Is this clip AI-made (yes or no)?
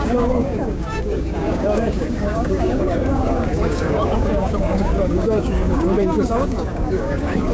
yes